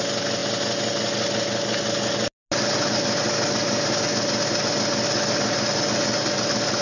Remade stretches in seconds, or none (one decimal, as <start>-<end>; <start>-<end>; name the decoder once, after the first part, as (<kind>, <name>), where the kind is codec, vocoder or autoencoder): none